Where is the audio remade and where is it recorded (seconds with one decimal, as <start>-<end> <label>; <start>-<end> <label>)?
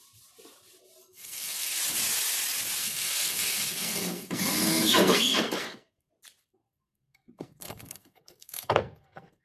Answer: 0.0-1.0 recorded; 1.0-1.8 remade; 1.8-2.8 recorded; 2.8-6.1 remade; 6.1-6.5 recorded; 6.5-9.4 remade